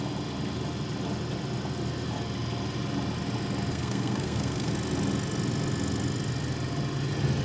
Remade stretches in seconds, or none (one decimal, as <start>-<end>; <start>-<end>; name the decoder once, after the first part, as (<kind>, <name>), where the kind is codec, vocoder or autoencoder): 3.7-4.7 (codec, SNAC)